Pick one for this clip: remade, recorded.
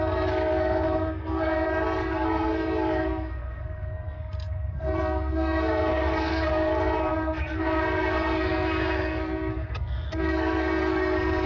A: remade